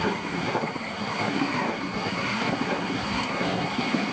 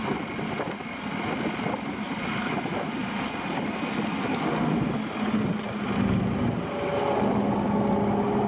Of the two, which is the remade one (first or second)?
first